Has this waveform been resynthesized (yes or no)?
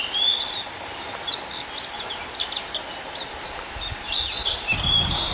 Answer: no